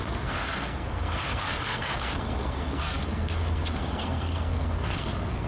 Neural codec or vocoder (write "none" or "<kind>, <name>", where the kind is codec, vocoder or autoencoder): codec, SNAC